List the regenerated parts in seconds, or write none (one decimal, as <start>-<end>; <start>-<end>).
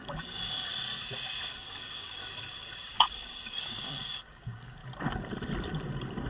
0.0-0.7; 1.5-2.2; 2.9-4.8